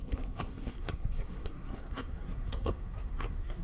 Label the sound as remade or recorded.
remade